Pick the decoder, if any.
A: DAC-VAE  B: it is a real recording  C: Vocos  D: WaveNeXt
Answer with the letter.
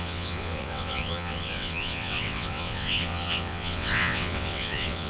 D